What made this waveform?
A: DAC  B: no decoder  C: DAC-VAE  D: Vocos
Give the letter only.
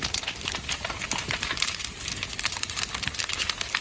B